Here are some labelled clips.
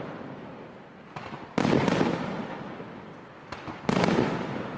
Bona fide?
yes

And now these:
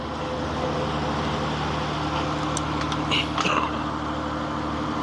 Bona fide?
yes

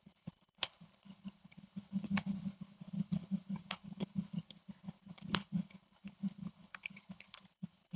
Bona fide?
no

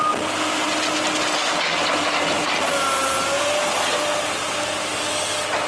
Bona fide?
yes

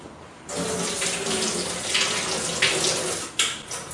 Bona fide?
yes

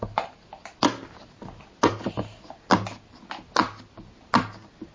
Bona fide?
yes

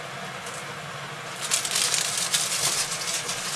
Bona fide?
yes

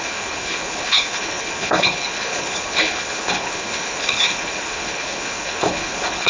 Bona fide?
no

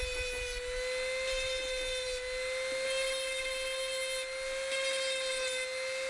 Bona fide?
yes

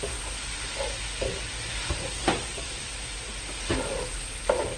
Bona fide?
yes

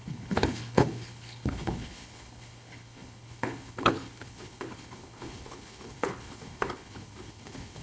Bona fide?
no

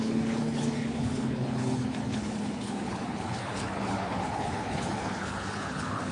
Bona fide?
no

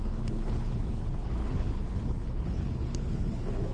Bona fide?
no